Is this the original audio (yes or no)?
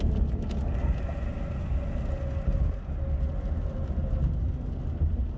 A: yes